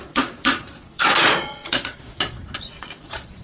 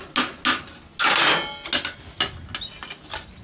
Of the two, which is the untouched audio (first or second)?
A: second